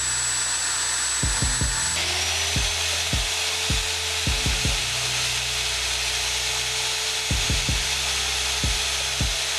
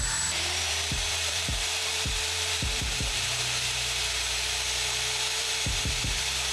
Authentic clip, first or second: first